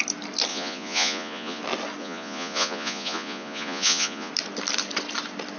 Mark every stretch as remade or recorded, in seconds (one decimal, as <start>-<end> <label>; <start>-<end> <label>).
0.0-0.5 recorded; 0.5-1.6 remade; 1.6-2.0 recorded; 2.0-4.3 remade; 4.3-5.6 recorded